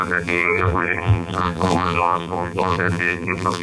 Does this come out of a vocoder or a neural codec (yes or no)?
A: yes